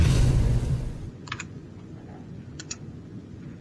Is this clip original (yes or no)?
no